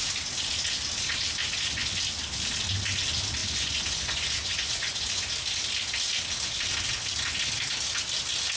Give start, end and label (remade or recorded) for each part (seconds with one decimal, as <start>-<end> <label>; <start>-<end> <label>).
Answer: 0.0-1.4 recorded; 1.4-2.0 remade; 2.0-3.4 recorded; 3.4-5.3 remade; 5.3-8.6 recorded